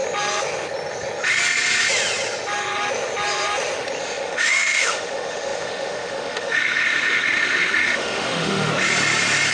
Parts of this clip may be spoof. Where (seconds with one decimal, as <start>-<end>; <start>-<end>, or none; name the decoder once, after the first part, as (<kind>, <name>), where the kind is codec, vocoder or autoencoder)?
4.0-8.7 (autoencoder, DAC-VAE)